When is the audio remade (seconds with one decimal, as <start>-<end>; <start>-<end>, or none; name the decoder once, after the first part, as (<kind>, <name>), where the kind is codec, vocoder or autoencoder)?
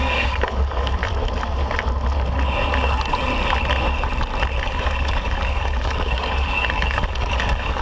0.0-1.0 (codec, DAC); 4.6-7.8